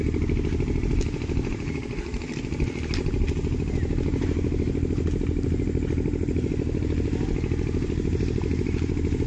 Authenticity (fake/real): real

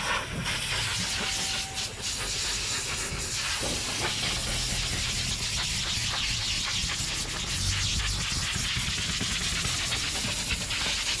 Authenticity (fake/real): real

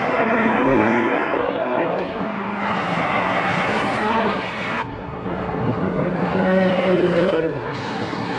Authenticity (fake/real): fake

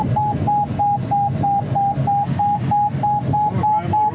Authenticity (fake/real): real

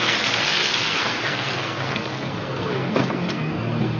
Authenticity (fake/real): fake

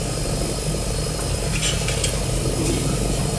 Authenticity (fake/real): real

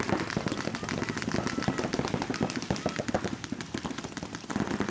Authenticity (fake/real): real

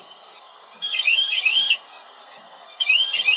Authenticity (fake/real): fake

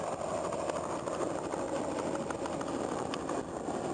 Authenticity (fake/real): real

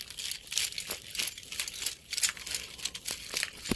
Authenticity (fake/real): real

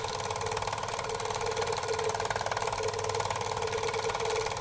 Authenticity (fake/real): real